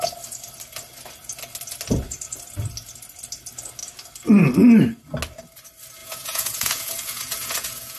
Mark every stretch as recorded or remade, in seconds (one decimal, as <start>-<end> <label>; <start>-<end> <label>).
0.0-6.0 recorded; 6.0-8.0 remade